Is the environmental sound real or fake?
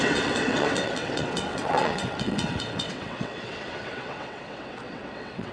fake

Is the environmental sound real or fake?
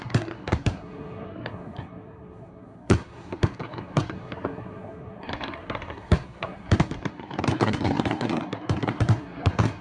fake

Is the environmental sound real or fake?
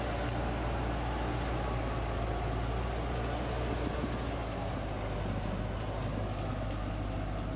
real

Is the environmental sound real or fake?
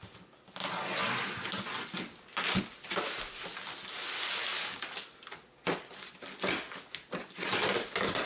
real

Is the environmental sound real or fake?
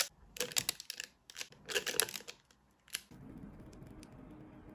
real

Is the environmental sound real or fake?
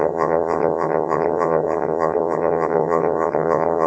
fake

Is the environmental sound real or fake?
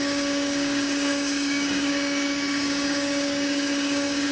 fake